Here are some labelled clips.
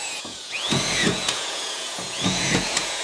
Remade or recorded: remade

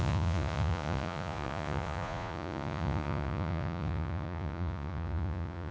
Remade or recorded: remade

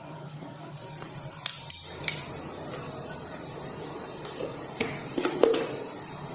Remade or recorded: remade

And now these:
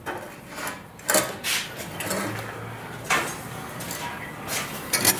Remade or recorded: recorded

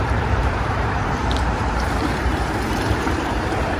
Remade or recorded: remade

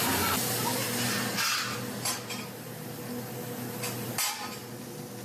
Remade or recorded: recorded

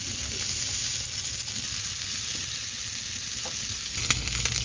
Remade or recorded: recorded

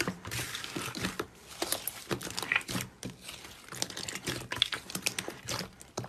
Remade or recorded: recorded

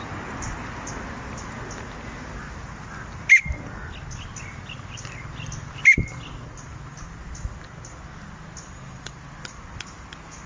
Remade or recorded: recorded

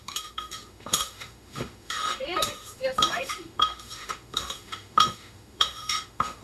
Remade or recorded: remade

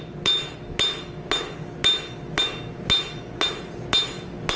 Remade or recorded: recorded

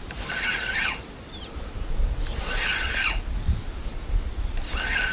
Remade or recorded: recorded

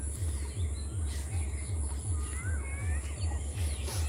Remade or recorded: recorded